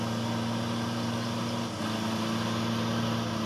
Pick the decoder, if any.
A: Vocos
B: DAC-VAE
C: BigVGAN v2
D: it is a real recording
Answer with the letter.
D